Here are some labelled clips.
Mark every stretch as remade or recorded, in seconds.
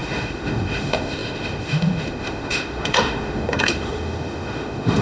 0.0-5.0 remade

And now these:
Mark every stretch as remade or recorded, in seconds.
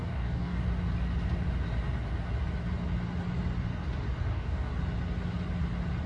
0.0-0.6 remade; 0.6-4.3 recorded; 4.3-4.7 remade; 4.7-6.1 recorded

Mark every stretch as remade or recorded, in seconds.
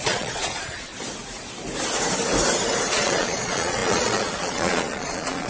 0.0-0.9 remade; 0.9-2.9 recorded; 2.9-5.5 remade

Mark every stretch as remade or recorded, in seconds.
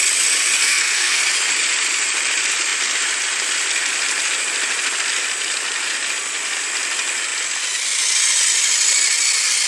0.0-0.6 recorded; 0.6-1.2 remade; 1.2-9.7 recorded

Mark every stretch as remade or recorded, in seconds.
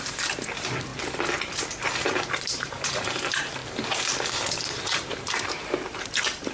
0.0-0.9 remade; 0.9-2.0 recorded; 2.0-3.6 remade; 3.6-4.5 recorded; 4.5-6.5 remade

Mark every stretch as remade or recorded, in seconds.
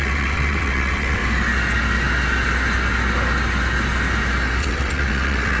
0.0-1.2 remade; 1.2-4.6 recorded; 4.6-5.6 remade